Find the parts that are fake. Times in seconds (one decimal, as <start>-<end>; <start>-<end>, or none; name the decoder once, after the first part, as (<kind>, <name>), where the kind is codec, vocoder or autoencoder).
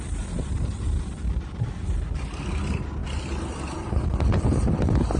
3.0-4.2 (vocoder, BigVGAN v2)